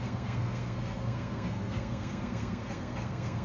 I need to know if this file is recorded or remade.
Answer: remade